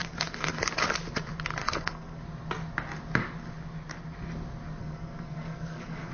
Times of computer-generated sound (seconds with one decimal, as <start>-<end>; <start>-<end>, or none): 0.0-0.6; 1.6-2.2; 4.8-6.1